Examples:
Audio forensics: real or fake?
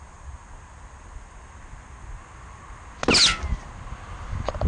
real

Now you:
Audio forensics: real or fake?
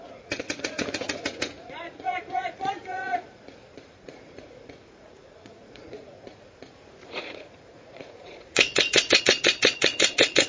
fake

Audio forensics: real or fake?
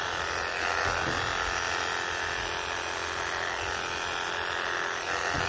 real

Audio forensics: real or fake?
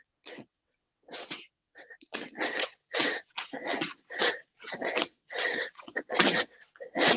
fake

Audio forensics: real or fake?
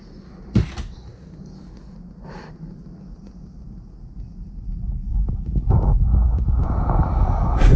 real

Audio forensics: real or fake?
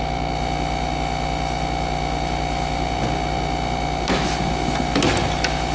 real